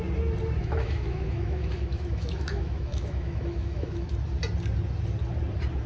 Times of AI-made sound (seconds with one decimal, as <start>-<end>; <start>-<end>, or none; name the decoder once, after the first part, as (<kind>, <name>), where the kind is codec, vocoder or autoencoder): 0.6-4.1 (autoencoder, DAC-VAE)